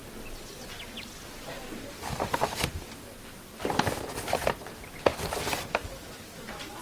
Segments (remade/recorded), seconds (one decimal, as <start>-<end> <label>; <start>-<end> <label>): 0.0-6.8 recorded